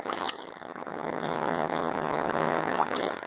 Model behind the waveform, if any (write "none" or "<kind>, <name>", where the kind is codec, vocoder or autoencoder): vocoder, HiFi-GAN